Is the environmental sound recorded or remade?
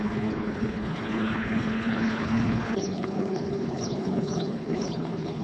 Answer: remade